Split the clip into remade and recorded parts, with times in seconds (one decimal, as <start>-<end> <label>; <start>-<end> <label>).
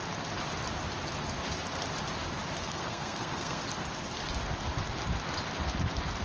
0.0-2.6 recorded; 2.6-3.6 remade; 3.6-6.2 recorded